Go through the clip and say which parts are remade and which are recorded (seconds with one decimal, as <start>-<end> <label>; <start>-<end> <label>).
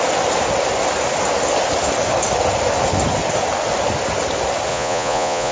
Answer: 0.0-4.7 recorded; 4.7-5.5 remade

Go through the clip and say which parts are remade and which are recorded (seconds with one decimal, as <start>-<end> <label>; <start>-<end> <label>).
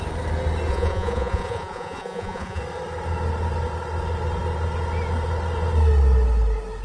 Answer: 0.0-0.7 recorded; 0.7-2.6 remade; 2.6-6.8 recorded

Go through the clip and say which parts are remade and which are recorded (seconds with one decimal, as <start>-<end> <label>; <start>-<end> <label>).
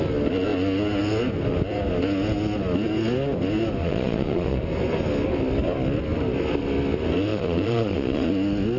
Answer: 0.0-3.8 recorded; 3.8-4.6 remade; 4.6-7.3 recorded; 7.3-8.3 remade; 8.3-8.8 recorded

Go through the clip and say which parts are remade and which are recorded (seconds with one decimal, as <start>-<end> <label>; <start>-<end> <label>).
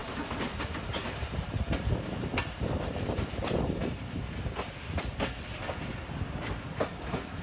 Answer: 0.0-7.4 recorded